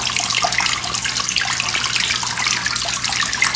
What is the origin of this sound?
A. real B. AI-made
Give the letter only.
A